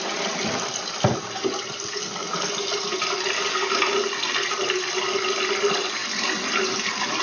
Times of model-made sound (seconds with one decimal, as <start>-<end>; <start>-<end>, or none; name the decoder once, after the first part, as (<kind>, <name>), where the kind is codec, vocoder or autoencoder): none